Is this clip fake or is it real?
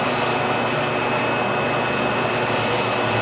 real